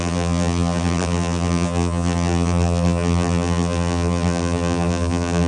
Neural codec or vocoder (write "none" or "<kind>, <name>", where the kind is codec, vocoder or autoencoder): vocoder, BigVGAN v2